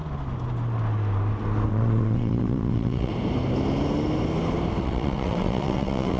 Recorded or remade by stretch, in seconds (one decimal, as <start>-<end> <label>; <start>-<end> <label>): 0.0-1.7 recorded; 1.7-3.1 remade; 3.1-4.8 recorded; 4.8-6.2 remade